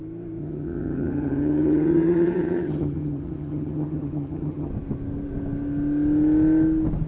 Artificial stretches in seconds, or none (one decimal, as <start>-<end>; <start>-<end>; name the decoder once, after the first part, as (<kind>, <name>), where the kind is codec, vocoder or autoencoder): 0.4-4.7 (vocoder, HiFi-GAN)